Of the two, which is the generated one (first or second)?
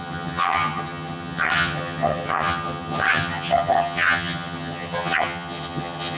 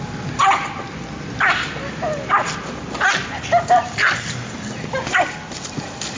first